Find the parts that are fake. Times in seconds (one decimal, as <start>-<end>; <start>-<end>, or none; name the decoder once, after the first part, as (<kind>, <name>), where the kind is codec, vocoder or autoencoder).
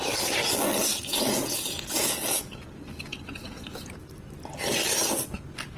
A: 0.9-4.1 (vocoder, Vocos)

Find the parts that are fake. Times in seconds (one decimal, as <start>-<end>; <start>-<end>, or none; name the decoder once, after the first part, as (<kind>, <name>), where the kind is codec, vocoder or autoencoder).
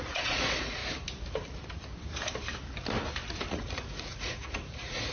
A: 0.0-0.8 (vocoder, Vocos); 3.5-5.1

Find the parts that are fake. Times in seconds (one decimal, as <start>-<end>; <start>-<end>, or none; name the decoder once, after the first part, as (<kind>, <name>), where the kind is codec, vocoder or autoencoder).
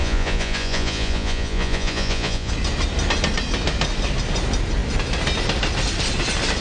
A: 0.0-2.5 (vocoder, Vocos)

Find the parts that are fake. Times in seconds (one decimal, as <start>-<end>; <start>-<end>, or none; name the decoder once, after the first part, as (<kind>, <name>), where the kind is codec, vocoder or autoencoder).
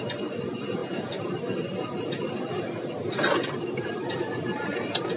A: none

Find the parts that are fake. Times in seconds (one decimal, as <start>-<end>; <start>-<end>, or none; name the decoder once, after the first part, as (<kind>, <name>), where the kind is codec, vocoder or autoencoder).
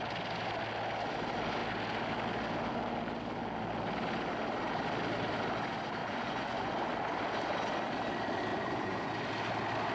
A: 6.0-6.7 (vocoder, Vocos); 8.5-9.1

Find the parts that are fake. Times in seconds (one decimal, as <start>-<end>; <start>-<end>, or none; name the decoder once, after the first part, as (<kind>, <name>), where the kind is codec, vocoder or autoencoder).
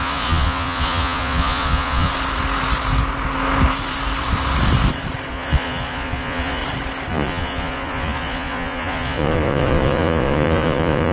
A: 0.0-2.1 (vocoder, Vocos); 5.3-6.6; 7.1-11.1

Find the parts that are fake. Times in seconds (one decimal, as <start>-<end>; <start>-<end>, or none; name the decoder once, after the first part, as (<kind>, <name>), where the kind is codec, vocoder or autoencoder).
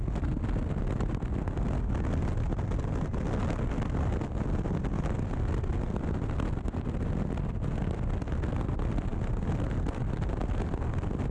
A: none